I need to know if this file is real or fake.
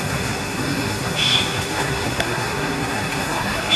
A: fake